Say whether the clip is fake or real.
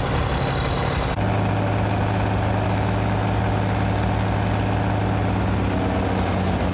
real